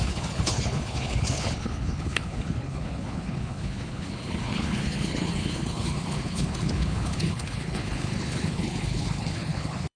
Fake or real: fake